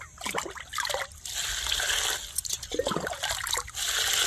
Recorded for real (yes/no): yes